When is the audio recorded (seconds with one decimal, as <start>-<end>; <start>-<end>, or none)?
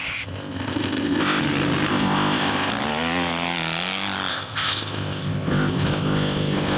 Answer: 1.4-1.9; 2.7-4.3